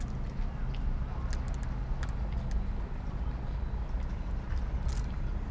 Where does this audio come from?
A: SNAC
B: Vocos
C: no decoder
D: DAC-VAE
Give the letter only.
C